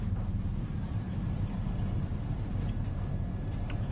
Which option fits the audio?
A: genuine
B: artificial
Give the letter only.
B